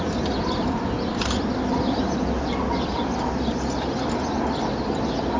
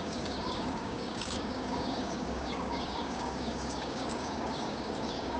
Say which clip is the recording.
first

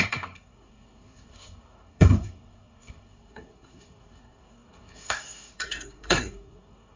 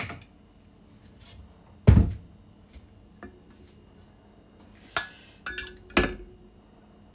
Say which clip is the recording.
second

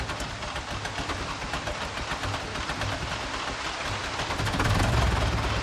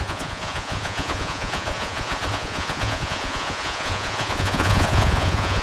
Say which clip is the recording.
first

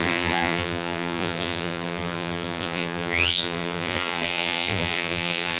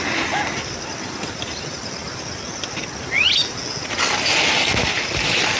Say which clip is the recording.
second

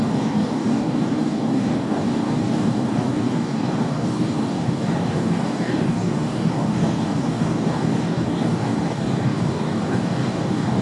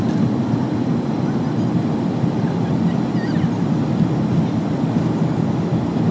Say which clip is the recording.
second